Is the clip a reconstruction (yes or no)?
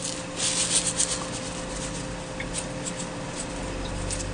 no